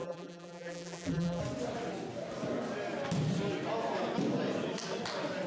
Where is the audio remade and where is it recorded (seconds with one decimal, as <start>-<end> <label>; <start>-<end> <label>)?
0.0-1.4 remade; 1.4-5.5 recorded